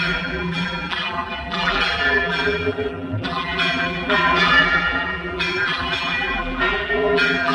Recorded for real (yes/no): no